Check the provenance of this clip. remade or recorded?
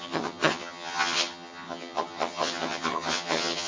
remade